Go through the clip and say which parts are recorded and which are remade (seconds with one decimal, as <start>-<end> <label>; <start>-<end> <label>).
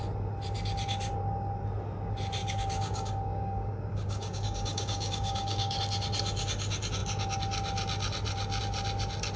0.0-2.4 recorded; 2.4-5.8 remade; 5.8-9.4 recorded